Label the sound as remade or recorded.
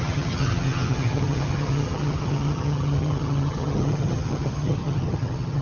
remade